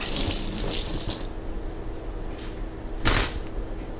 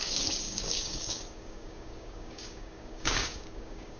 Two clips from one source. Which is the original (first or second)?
first